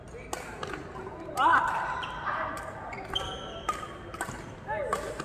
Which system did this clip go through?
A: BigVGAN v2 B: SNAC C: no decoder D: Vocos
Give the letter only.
C